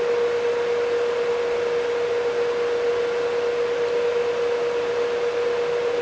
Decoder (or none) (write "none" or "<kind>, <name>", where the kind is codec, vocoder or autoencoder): none